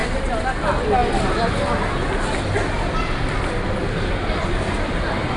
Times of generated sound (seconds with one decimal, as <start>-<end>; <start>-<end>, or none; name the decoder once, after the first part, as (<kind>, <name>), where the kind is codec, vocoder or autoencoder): none